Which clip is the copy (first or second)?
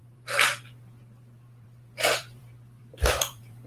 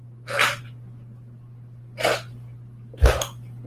first